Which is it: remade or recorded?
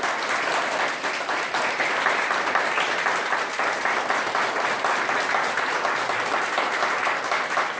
recorded